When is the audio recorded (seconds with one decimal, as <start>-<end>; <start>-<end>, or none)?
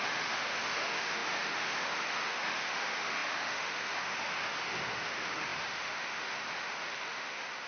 none